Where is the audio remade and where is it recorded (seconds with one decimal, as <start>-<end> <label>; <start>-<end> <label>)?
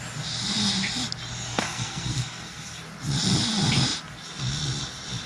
0.0-1.5 recorded; 1.5-2.8 remade; 2.8-5.3 recorded